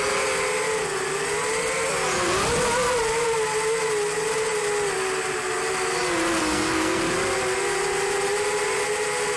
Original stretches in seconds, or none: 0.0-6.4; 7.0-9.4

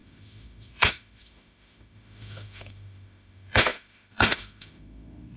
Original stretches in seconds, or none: none

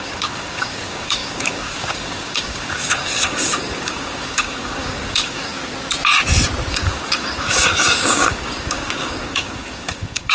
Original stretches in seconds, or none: 5.5-6.7

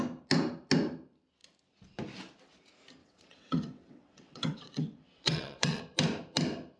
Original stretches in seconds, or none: 0.0-3.0; 5.8-6.8